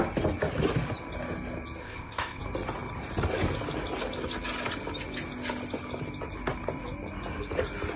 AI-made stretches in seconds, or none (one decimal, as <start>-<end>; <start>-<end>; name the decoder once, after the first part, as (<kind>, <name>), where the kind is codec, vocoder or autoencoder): 1.8-2.4 (codec, ZipCodec)